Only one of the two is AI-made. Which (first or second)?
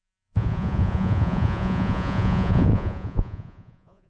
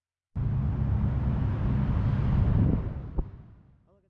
first